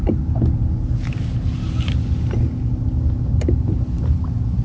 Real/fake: real